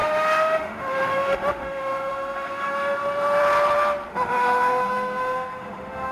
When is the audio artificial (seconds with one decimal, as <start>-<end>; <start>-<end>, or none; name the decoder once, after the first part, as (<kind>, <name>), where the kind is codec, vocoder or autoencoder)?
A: 0.0-3.4 (autoencoder, DAC-VAE); 4.1-6.1